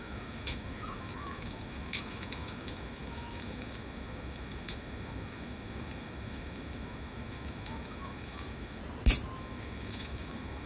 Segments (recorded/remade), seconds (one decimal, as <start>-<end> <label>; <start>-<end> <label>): 0.0-8.8 remade; 8.8-9.4 recorded; 9.4-10.7 remade